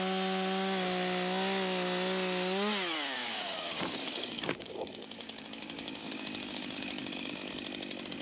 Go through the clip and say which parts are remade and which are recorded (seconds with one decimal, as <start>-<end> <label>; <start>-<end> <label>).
0.0-3.2 recorded; 3.2-7.5 remade; 7.5-8.2 recorded

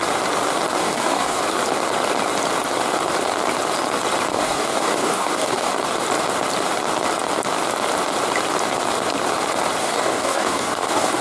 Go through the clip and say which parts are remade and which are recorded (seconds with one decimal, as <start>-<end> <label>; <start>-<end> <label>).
0.0-0.8 recorded; 0.8-1.4 remade; 1.4-4.3 recorded; 4.3-5.7 remade; 5.7-9.8 recorded; 9.8-11.2 remade

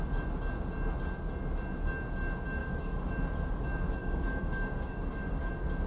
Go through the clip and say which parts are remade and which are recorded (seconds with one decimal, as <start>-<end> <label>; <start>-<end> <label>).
0.0-2.6 recorded; 2.6-3.1 remade; 3.1-4.0 recorded; 4.0-5.5 remade; 5.5-5.9 recorded

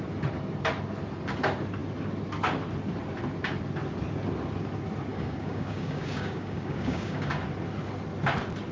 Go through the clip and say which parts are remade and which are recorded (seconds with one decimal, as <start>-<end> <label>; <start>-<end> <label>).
0.0-5.1 recorded; 5.1-7.4 remade; 7.4-8.7 recorded

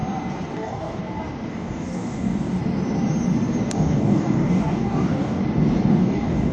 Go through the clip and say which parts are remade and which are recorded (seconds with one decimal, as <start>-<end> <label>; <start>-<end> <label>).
0.0-0.5 recorded; 0.5-1.0 remade; 1.0-1.5 recorded; 1.5-2.6 remade; 2.6-3.7 recorded; 3.7-5.4 remade; 5.4-5.9 recorded; 5.9-6.5 remade

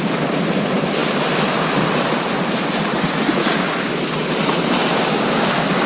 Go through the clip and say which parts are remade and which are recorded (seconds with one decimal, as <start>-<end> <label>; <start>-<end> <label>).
0.0-3.4 recorded; 3.4-3.9 remade; 3.9-4.8 recorded; 4.8-5.5 remade; 5.5-5.9 recorded

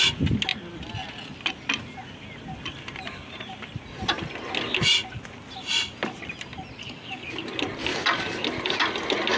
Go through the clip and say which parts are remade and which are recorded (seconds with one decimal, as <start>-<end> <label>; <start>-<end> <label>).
0.0-6.8 recorded; 6.8-7.3 remade; 7.3-9.4 recorded